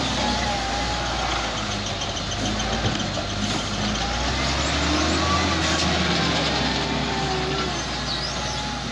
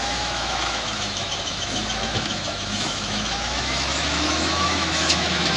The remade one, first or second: second